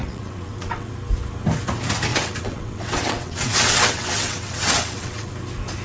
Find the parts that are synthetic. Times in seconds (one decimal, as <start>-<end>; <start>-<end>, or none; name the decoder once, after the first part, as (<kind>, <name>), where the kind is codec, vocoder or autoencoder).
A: 0.0-0.9 (vocoder, WaveNeXt); 2.1-5.3